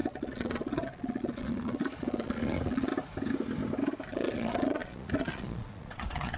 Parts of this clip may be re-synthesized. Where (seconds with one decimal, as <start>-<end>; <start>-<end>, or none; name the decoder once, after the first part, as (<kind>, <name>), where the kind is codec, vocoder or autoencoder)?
0.0-2.9 (vocoder, Vocos); 4.1-6.4